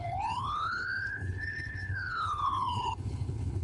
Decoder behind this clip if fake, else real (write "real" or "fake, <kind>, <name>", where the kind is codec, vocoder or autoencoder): fake, codec, HILCodec